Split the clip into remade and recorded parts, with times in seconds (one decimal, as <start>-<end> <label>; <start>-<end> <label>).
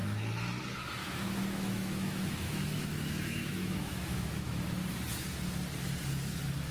0.0-1.0 recorded; 1.0-4.6 remade; 4.6-6.7 recorded